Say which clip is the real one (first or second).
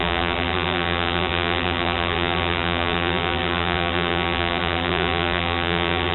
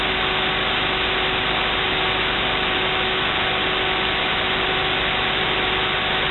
second